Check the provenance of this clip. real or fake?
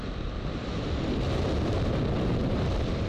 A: real